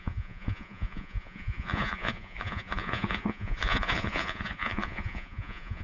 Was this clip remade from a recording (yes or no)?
yes